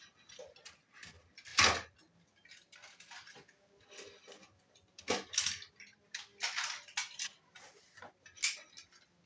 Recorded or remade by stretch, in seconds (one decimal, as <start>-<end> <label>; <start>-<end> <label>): 0.0-9.3 recorded